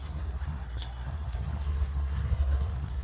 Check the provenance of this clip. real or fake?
fake